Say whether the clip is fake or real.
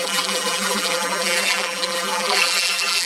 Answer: fake